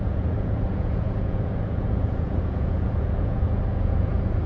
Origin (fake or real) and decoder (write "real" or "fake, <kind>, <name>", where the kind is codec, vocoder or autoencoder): fake, vocoder, Vocos